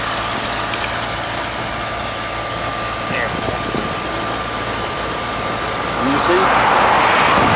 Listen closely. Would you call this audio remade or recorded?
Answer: recorded